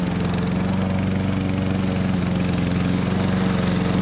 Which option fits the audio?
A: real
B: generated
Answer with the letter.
A